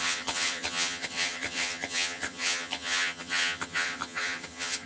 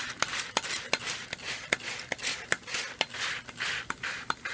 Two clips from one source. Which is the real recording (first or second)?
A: second